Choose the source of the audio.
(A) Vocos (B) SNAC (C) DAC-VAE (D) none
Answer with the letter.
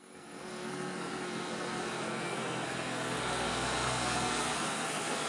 B